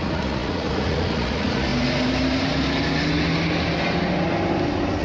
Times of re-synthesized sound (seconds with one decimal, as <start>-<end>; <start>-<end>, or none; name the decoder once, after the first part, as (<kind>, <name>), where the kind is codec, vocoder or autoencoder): 0.0-1.7 (vocoder, Vocos)